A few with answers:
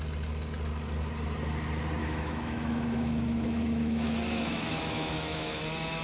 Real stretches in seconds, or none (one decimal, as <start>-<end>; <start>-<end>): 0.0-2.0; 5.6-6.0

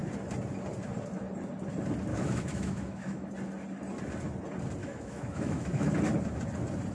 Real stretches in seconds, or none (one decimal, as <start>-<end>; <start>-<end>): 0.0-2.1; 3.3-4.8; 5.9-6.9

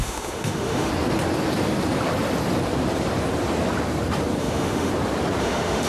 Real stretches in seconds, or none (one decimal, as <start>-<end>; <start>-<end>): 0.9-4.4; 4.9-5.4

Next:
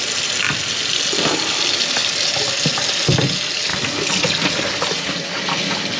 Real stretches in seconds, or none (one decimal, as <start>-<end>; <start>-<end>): 0.0-6.0